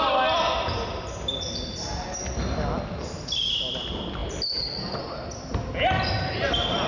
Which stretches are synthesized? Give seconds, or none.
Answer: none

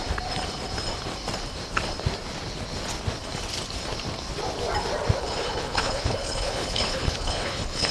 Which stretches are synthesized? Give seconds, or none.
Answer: 5.2-7.9 (codec, HILCodec)

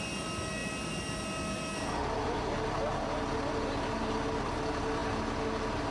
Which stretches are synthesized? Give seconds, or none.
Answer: none

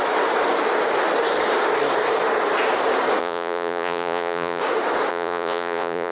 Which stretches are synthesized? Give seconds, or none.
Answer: 3.2-4.6 (vocoder, Vocos); 5.1-6.1

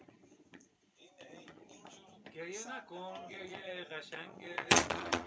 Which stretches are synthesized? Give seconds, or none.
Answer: 0.0-1.9 (vocoder, Vocos); 3.3-5.3

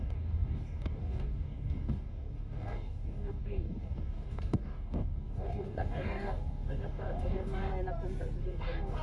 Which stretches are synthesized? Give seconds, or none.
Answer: 0.0-7.7 (codec, DAC); 8.4-9.0

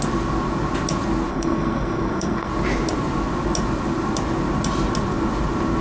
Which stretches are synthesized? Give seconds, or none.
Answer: 1.3-2.5 (codec, SNAC)

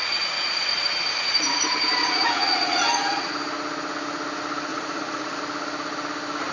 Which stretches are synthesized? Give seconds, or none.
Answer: 0.0-0.9 (vocoder, Vocos); 2.0-3.3; 4.7-5.4